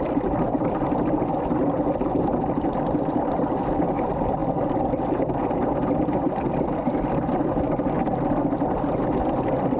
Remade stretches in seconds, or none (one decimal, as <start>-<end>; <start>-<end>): none